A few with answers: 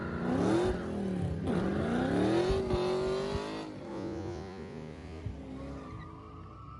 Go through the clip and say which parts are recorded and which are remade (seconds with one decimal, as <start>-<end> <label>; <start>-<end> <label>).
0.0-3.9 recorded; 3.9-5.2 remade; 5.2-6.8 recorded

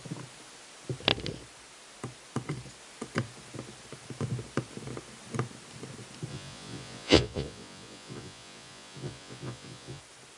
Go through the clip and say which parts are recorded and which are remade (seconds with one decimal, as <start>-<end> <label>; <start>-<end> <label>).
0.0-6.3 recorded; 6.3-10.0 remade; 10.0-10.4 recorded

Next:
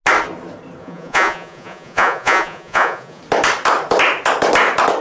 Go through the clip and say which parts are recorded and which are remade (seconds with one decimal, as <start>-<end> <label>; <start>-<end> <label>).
0.0-0.8 recorded; 0.8-3.2 remade; 3.2-5.0 recorded

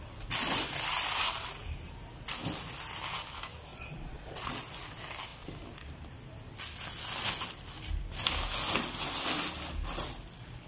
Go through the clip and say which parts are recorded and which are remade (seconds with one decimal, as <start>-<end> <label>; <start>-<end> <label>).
0.0-3.7 recorded; 3.7-4.5 remade; 4.5-10.7 recorded

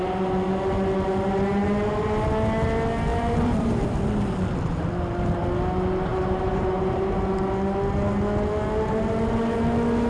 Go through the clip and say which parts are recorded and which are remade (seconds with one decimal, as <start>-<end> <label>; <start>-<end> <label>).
0.0-3.1 recorded; 3.1-3.8 remade; 3.8-6.1 recorded; 6.1-7.2 remade; 7.2-10.1 recorded

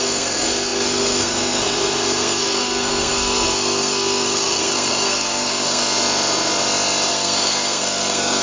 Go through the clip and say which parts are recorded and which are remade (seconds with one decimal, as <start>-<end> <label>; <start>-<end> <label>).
0.0-5.8 remade; 5.8-7.1 recorded; 7.1-8.4 remade

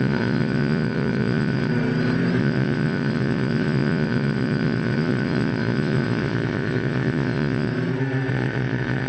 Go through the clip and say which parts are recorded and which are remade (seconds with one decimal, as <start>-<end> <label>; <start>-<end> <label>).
0.0-1.7 remade; 1.7-2.4 recorded; 2.4-7.7 remade; 7.7-8.3 recorded; 8.3-9.1 remade

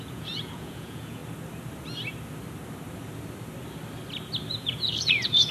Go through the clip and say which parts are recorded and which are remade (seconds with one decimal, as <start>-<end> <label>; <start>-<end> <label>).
0.0-1.2 remade; 1.2-4.5 recorded; 4.5-5.5 remade